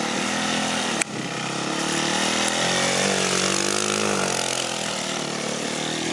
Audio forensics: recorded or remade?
recorded